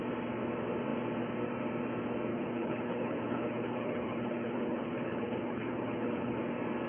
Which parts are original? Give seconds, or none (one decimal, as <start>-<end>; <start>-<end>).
0.0-2.3; 6.4-6.9